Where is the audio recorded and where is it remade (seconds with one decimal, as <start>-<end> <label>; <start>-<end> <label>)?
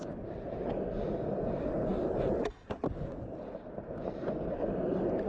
0.0-5.3 recorded